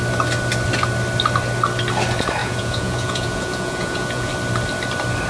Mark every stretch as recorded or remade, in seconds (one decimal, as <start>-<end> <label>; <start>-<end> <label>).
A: 0.0-2.4 recorded; 2.4-4.3 remade; 4.3-5.3 recorded